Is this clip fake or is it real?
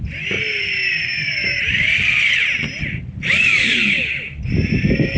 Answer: fake